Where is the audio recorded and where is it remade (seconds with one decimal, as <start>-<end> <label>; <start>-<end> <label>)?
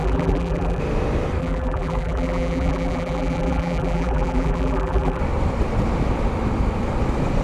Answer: 0.0-0.8 remade; 0.8-1.4 recorded; 1.4-5.2 remade; 5.2-7.4 recorded